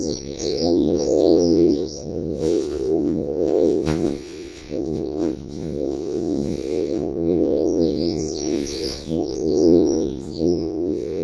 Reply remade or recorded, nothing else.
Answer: remade